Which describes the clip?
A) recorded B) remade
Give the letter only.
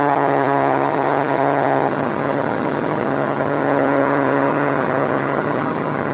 B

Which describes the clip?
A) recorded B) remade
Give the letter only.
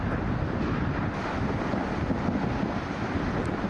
A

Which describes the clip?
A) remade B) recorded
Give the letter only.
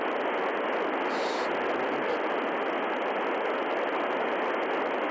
B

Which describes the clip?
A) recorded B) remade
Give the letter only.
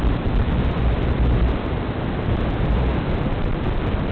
A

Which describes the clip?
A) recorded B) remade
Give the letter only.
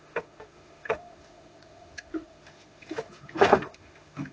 B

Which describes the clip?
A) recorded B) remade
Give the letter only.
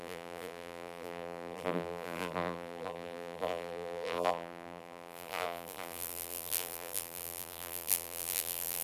B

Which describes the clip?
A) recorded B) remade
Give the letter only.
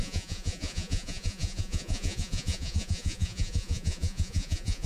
B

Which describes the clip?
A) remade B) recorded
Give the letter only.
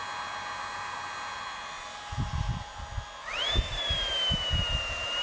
B